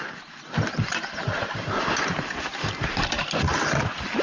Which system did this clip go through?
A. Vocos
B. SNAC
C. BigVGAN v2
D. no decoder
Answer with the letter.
D